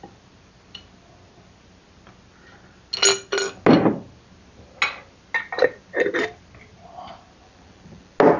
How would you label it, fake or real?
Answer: real